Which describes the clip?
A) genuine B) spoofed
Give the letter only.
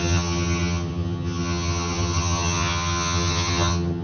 B